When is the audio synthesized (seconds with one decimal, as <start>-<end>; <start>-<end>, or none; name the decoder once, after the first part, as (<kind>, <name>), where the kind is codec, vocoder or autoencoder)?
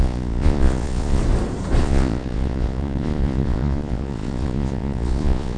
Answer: 0.0-1.2 (vocoder, Vocos); 1.8-5.6